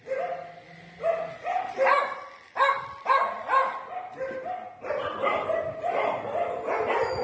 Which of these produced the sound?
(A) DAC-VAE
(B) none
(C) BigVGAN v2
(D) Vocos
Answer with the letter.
B